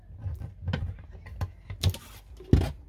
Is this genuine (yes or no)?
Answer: yes